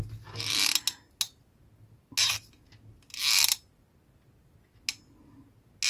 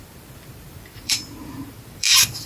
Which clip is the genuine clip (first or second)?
first